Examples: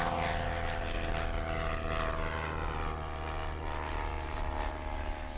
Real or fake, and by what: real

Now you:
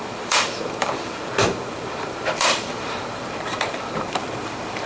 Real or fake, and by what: fake, vocoder, BigVGAN v2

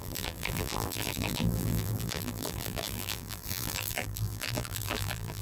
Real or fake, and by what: fake, vocoder, BigVGAN v2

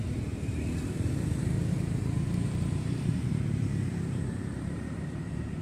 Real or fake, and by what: fake, vocoder, BigVGAN v2